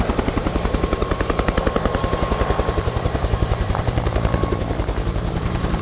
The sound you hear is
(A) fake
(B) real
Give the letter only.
A